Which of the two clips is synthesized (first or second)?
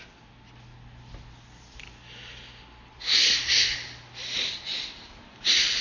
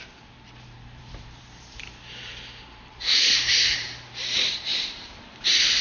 second